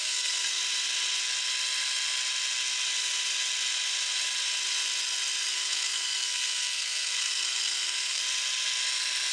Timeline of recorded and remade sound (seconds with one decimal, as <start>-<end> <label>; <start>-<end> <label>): 0.0-0.6 remade; 0.6-5.5 recorded; 5.5-8.2 remade; 8.2-9.3 recorded